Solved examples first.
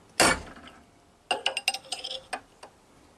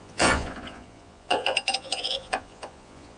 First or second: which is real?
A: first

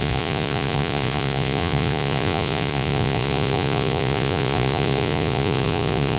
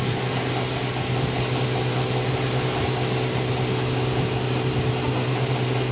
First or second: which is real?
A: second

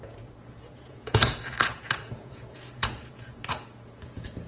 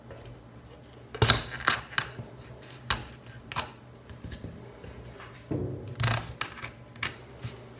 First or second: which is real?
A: second